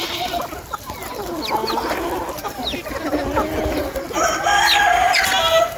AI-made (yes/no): no